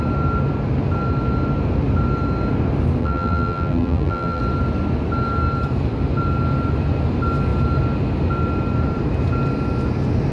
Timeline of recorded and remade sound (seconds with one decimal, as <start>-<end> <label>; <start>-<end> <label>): 0.0-3.0 recorded; 3.0-4.4 remade; 4.4-10.3 recorded

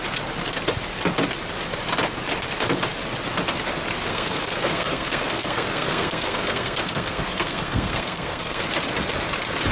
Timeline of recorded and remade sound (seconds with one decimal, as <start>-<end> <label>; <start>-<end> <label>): 0.0-4.1 recorded; 4.1-8.6 remade; 8.6-9.7 recorded